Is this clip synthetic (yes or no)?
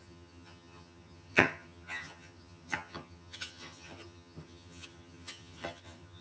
yes